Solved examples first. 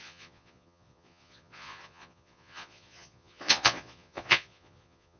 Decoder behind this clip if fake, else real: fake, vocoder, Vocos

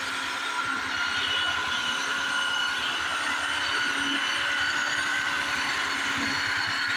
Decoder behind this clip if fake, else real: real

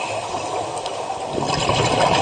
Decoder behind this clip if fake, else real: real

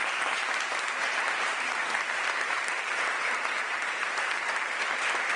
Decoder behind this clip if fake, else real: fake, vocoder, BigVGAN v2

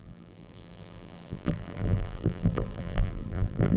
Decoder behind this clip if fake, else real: fake, vocoder, BigVGAN v2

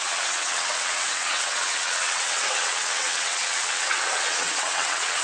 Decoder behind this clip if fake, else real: fake, vocoder, WaveNeXt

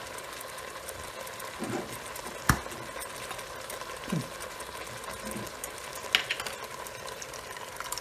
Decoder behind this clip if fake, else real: real